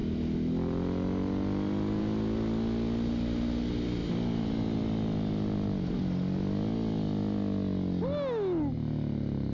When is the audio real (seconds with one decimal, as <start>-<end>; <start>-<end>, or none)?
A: 0.0-4.0; 4.8-9.5